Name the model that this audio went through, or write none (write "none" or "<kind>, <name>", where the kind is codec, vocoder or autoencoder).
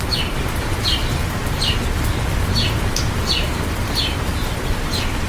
none